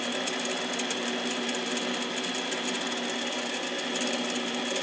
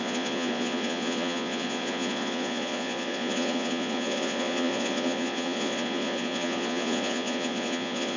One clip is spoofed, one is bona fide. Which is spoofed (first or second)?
second